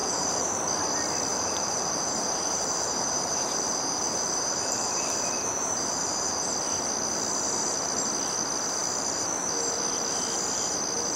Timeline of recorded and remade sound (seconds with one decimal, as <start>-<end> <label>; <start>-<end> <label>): 0.0-0.6 remade; 0.6-1.3 recorded; 1.3-6.5 remade; 6.5-11.2 recorded